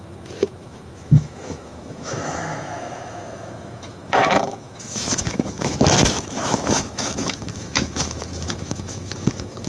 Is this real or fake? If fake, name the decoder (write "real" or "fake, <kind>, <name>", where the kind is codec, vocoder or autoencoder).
fake, autoencoder, DAC-VAE